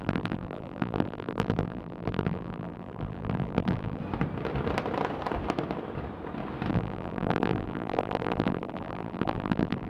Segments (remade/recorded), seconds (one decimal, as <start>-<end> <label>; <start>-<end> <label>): 0.0-4.0 remade; 4.0-6.7 recorded; 6.7-9.9 remade